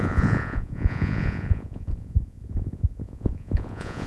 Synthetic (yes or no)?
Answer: yes